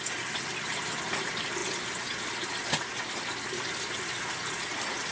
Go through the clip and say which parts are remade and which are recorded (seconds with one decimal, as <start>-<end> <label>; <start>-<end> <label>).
0.0-5.1 recorded